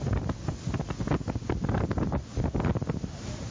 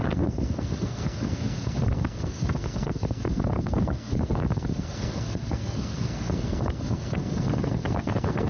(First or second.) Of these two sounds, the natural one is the first